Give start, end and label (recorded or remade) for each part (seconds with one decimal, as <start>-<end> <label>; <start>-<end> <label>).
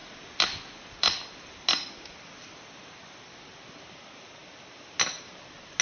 0.0-5.8 recorded